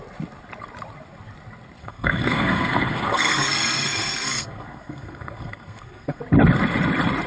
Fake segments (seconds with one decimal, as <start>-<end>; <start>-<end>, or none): 1.8-6.2